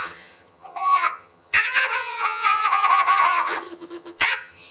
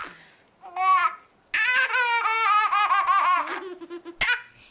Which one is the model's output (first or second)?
first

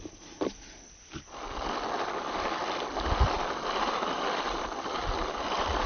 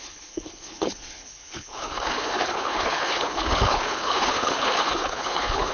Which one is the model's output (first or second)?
second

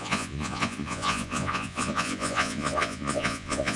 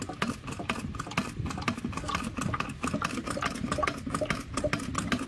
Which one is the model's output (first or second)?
first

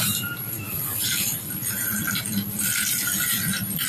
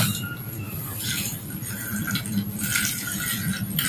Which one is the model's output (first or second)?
first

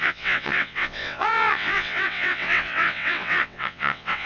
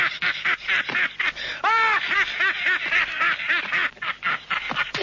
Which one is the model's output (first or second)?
first